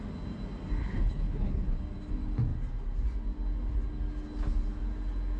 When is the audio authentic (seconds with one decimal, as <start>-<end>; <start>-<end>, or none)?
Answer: 0.0-0.8; 1.8-5.4